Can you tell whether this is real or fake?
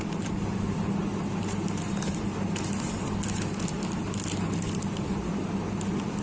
real